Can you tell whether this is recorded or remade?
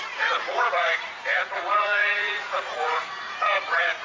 remade